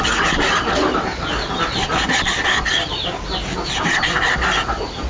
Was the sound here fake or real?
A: real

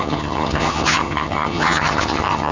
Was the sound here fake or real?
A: fake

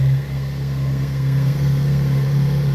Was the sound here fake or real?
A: fake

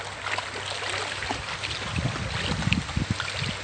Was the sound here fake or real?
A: real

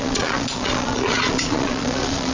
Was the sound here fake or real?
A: fake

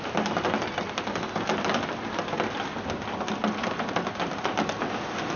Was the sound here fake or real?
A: real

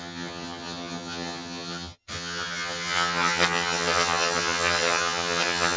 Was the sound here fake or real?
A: fake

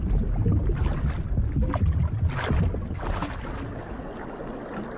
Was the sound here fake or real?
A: real